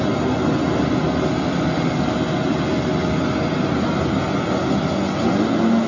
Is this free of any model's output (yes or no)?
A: yes